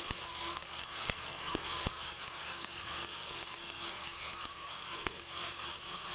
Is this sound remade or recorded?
remade